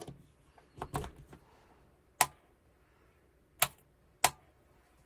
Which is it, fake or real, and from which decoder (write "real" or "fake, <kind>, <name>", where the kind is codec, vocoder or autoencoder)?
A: real